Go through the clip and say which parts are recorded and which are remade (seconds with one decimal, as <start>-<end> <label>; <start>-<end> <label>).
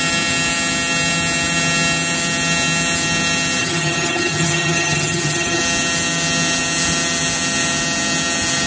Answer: 0.0-3.6 recorded; 3.6-5.6 remade; 5.6-8.7 recorded